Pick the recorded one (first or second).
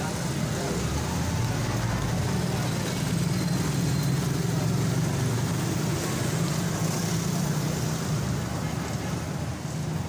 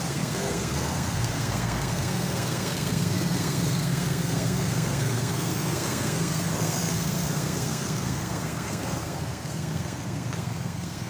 first